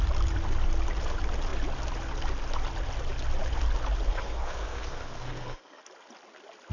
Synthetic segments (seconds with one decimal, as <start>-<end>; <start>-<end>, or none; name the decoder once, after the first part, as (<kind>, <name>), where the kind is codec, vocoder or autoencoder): 4.1-5.8 (codec, SNAC)